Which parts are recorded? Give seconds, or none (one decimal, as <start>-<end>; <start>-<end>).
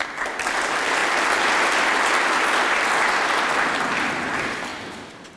0.0-5.4